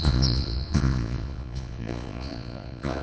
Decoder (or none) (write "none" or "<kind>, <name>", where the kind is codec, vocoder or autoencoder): vocoder, Vocos